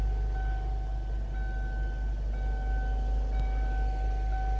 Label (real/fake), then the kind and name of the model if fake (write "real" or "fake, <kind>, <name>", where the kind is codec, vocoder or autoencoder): real